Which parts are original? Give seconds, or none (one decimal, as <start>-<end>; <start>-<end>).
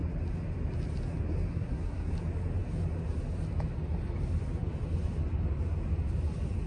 0.0-1.5; 2.1-6.7